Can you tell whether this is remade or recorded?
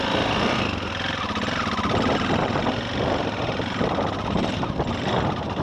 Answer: recorded